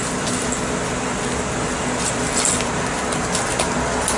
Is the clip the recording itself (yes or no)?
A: yes